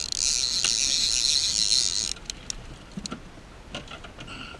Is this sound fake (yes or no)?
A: no